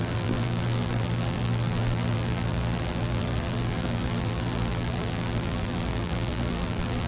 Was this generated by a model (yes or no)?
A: yes